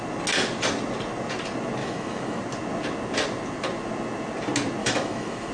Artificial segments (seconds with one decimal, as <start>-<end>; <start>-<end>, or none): 1.8-2.4; 4.8-5.5